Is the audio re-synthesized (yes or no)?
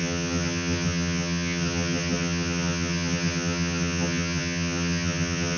yes